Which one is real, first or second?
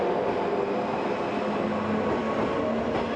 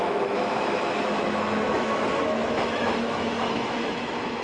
first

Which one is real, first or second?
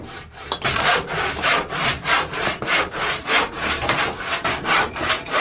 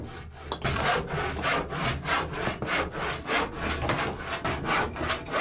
second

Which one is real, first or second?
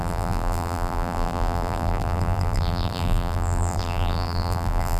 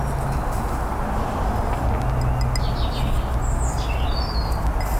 second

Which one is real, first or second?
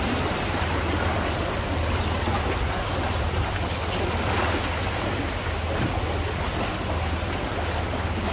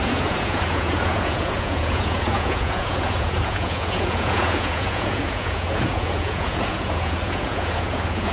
first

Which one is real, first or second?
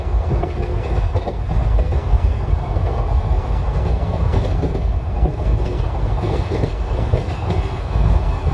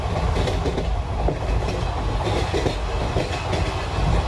second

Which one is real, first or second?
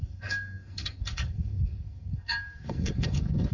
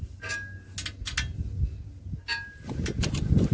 second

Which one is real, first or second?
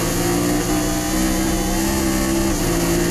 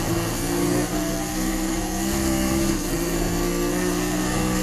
first